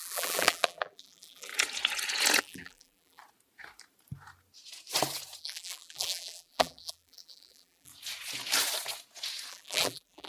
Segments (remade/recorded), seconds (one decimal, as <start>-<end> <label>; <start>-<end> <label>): 0.0-1.5 remade; 1.5-2.4 recorded; 2.4-3.2 remade; 3.2-5.4 recorded; 5.4-7.9 remade; 7.9-9.5 recorded; 9.5-10.3 remade